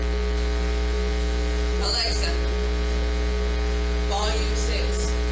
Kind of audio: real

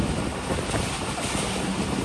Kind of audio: real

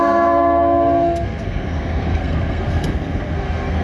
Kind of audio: fake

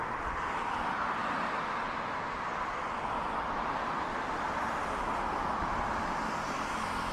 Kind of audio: real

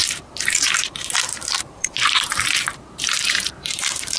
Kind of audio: fake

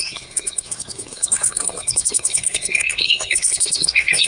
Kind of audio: fake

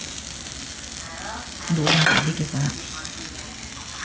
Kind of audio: real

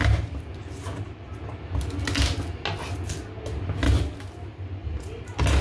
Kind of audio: real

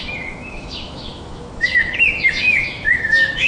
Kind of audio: fake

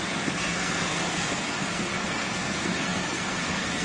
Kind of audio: fake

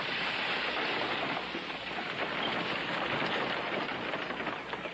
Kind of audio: real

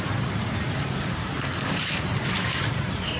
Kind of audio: fake